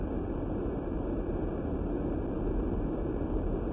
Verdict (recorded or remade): recorded